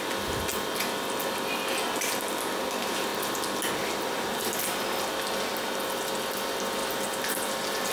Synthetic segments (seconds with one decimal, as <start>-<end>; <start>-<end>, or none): 6.8-7.5